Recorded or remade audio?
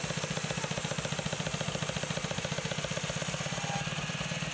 recorded